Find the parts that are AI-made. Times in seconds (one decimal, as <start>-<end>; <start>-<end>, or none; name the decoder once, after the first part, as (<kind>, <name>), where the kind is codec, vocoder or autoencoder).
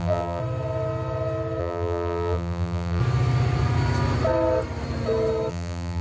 0.0-0.4 (vocoder, BigVGAN v2); 1.6-3.0; 5.5-6.0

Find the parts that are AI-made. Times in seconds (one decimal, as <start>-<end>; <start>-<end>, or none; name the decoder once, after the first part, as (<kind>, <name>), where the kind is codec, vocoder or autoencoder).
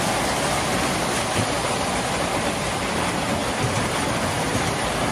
none